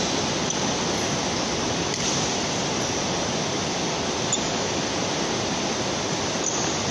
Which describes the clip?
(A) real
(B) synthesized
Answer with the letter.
A